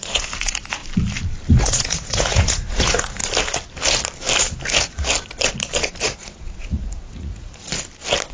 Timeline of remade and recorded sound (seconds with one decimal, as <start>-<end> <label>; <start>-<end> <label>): 0.0-0.8 remade; 0.8-1.6 recorded; 1.6-3.2 remade; 3.2-6.0 recorded; 6.0-7.7 remade; 7.7-8.3 recorded